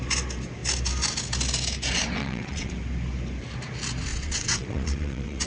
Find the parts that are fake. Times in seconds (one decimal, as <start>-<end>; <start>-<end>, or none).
2.2-2.7; 4.1-5.5